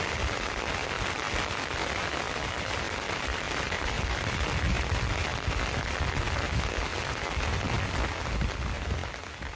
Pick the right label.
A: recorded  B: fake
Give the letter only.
A